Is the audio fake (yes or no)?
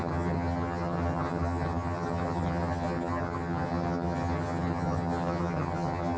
yes